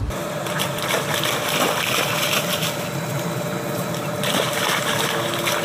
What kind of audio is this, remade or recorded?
recorded